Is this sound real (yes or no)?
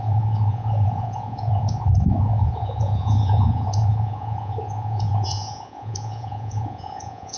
no